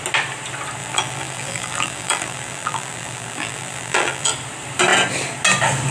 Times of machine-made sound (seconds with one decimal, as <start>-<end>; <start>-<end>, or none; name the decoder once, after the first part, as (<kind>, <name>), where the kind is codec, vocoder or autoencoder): 0.8-4.3 (vocoder, BigVGAN v2)